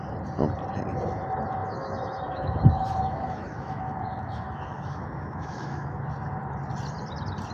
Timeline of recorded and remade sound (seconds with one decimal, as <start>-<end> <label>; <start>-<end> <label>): 0.0-1.6 recorded; 1.6-6.1 remade; 6.1-7.5 recorded